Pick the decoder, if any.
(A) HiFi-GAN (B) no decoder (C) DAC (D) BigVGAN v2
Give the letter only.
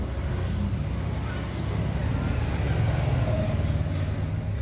B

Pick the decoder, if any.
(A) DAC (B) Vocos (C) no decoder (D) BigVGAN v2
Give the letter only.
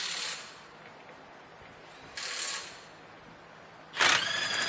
C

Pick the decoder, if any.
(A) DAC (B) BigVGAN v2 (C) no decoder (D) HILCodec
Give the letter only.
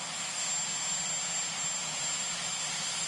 C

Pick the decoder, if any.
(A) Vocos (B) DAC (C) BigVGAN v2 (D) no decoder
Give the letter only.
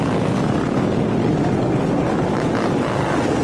D